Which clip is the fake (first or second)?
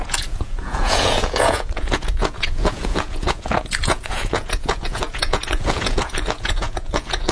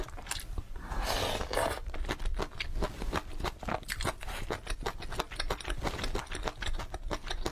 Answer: first